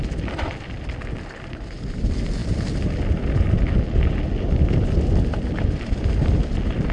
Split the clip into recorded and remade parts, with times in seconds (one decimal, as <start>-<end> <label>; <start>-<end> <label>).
0.0-6.9 recorded